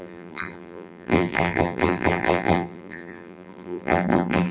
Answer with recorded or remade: remade